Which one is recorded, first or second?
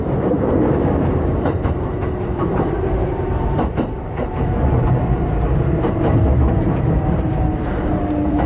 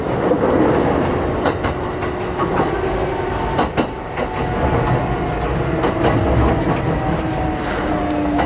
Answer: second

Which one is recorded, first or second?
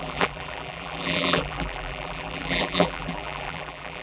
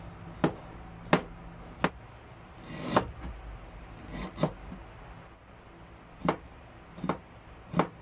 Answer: second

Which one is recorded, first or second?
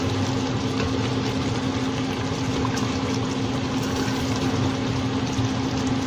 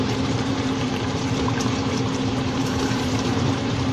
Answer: first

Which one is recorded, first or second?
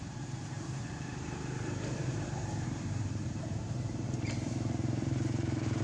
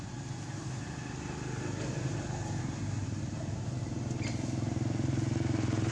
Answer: second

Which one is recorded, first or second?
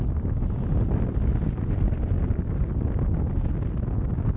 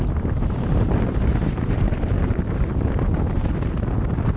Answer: first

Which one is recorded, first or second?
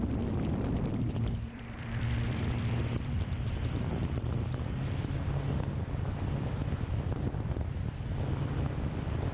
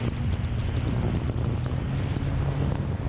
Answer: second